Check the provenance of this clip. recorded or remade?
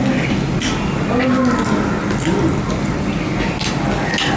recorded